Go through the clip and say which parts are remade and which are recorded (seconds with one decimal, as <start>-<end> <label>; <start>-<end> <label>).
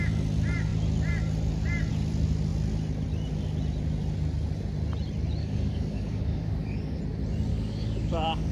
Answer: 0.0-5.4 recorded; 5.4-7.0 remade; 7.0-7.5 recorded; 7.5-8.5 remade